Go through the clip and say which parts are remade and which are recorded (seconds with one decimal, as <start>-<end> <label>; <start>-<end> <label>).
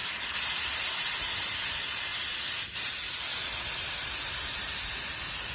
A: 0.0-2.1 remade; 2.1-3.3 recorded; 3.3-5.5 remade